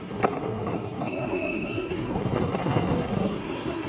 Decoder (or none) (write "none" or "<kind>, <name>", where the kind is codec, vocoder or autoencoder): codec, SNAC